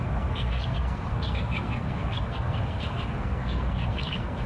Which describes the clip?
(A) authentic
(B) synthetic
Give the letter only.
B